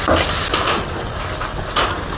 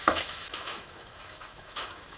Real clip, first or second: first